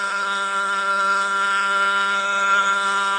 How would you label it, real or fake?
fake